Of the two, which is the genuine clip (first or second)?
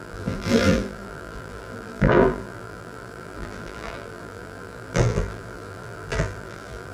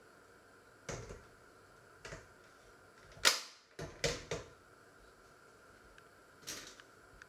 second